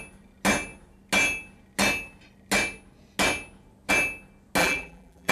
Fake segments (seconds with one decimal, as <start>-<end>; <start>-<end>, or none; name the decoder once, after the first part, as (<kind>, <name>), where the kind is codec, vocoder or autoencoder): 4.6-5.3 (vocoder, BigVGAN v2)